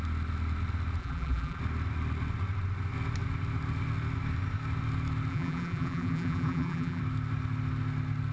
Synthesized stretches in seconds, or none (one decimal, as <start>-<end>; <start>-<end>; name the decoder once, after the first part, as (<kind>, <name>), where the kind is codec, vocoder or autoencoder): 1.0-1.6 (vocoder, BigVGAN v2); 5.3-7.0